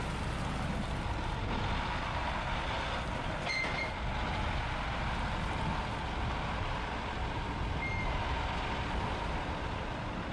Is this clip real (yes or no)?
yes